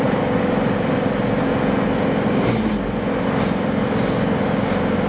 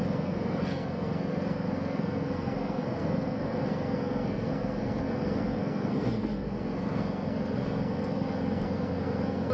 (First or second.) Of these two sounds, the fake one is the second